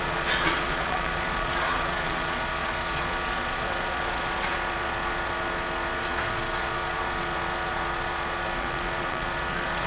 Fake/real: fake